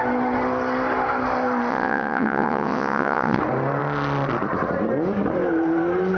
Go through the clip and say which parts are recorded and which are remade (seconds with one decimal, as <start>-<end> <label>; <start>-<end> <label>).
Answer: 0.0-1.7 recorded; 1.7-3.4 remade; 3.4-6.2 recorded